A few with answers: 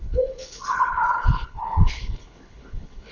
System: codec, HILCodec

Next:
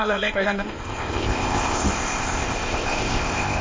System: codec, ZipCodec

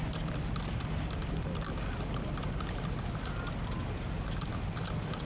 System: vocoder, BigVGAN v2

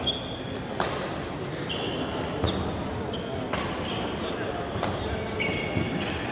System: none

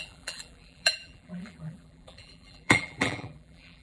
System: vocoder, BigVGAN v2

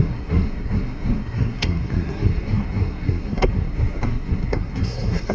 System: codec, SNAC